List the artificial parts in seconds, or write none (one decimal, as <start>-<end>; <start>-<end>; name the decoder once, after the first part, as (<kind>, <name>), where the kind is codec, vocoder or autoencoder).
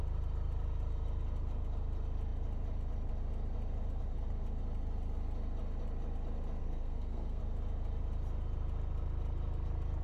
6.6-7.4 (codec, SNAC)